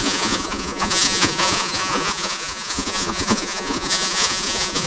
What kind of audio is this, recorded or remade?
remade